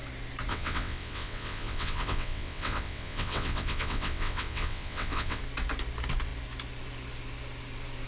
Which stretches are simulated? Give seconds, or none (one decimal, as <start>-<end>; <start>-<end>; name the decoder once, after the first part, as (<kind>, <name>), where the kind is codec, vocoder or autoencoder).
0.5-5.4 (vocoder, WaveNeXt)